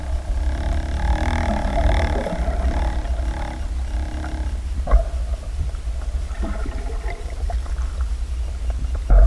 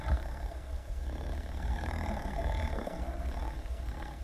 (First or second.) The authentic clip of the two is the first